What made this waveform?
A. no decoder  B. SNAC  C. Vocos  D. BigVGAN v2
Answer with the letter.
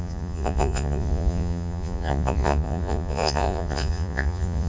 C